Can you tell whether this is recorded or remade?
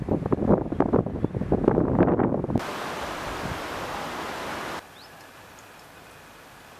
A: recorded